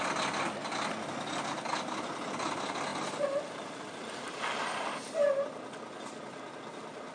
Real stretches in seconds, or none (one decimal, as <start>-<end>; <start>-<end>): 0.0-7.1